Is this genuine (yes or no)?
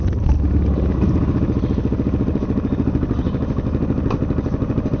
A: yes